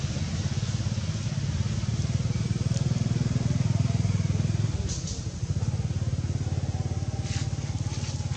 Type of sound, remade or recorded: recorded